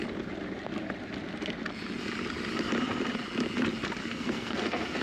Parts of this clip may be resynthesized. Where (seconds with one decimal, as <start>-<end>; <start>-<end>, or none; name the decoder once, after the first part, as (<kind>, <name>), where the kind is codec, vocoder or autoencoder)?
4.0-5.0 (codec, SNAC)